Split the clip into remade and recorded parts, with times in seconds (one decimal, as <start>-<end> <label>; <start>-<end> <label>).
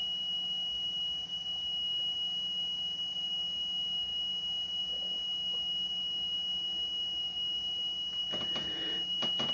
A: 0.0-9.5 recorded